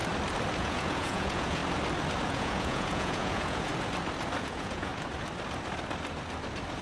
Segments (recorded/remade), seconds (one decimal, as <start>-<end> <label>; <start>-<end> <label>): 0.0-0.6 recorded; 0.6-1.6 remade; 1.6-2.3 recorded; 2.3-3.7 remade; 3.7-4.4 recorded; 4.4-4.9 remade; 4.9-6.8 recorded